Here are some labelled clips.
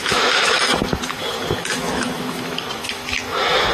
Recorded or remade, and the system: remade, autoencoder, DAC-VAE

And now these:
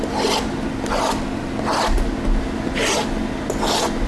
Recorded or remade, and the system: recorded